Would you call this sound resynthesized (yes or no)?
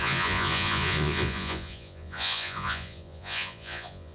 yes